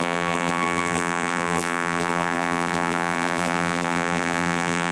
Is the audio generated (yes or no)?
yes